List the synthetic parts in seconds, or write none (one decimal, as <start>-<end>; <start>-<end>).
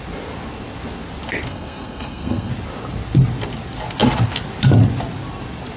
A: 1.5-2.5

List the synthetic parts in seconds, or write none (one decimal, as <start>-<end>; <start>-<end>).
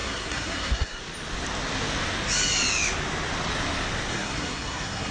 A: 0.0-1.0; 4.1-5.1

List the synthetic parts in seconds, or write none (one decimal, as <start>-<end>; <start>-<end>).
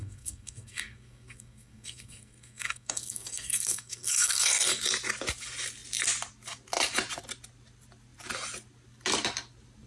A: 0.0-4.8